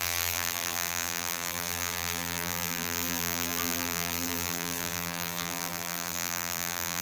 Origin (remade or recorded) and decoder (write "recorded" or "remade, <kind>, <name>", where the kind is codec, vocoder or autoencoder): remade, vocoder, BigVGAN v2